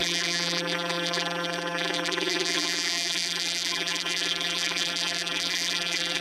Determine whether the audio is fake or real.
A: fake